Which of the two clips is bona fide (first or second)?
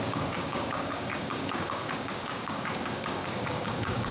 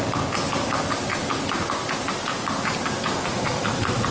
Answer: second